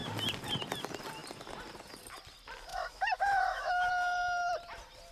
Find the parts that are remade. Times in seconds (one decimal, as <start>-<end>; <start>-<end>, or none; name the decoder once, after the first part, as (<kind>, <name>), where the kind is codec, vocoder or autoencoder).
2.7-3.9 (autoencoder, DAC-VAE)